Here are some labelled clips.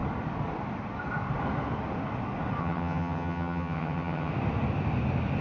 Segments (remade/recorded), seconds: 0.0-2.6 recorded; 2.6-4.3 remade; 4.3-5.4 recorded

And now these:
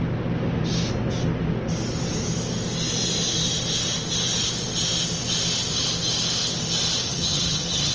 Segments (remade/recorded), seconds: 0.0-7.1 recorded; 7.1-7.9 remade

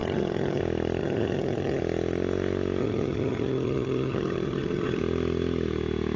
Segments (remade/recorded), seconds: 0.0-0.6 remade; 0.6-1.0 recorded; 1.0-1.8 remade; 1.8-2.8 recorded; 2.8-5.0 remade; 5.0-6.2 recorded

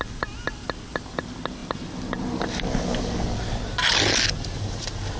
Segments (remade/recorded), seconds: 0.0-5.2 recorded

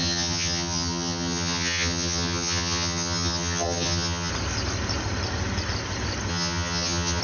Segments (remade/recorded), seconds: 0.0-4.3 remade; 4.3-6.3 recorded; 6.3-7.2 remade

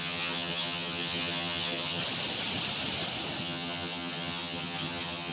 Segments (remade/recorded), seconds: 0.0-2.0 remade; 2.0-3.4 recorded; 3.4-5.3 remade

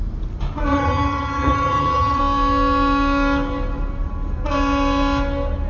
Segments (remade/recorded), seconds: 0.0-0.7 recorded; 0.7-2.2 remade; 2.2-5.7 recorded

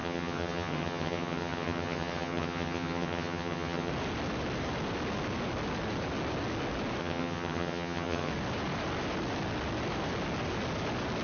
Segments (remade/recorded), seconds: 0.0-3.9 remade; 3.9-7.0 recorded; 7.0-8.3 remade; 8.3-11.2 recorded